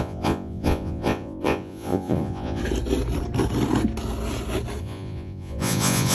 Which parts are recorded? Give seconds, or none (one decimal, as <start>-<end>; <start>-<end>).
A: 2.6-4.8